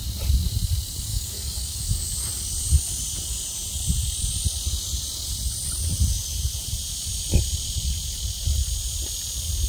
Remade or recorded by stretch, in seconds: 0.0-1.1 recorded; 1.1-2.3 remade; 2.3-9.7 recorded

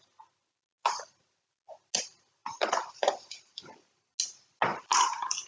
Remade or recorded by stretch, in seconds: 0.0-2.4 recorded; 2.4-4.1 remade; 4.1-4.7 recorded; 4.7-5.5 remade

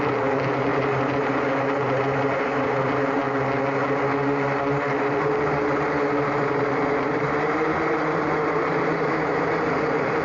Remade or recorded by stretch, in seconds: 0.0-3.2 remade; 3.2-6.4 recorded; 6.4-10.2 remade

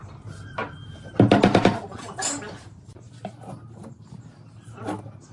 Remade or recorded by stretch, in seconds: 0.0-5.3 recorded